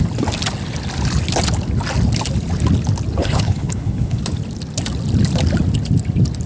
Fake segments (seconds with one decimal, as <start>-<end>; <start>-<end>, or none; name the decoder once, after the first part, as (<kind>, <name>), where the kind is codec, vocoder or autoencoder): 3.2-4.2 (codec, HILCodec)